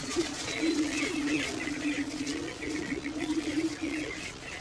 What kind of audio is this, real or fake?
fake